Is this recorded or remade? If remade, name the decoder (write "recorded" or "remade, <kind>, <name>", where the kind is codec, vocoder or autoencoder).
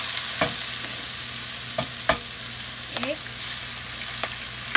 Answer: recorded